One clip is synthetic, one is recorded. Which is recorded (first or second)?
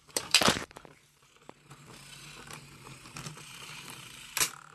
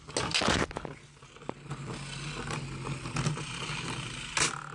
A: second